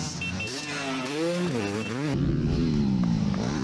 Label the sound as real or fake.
real